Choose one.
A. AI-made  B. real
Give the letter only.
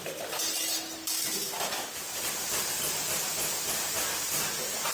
B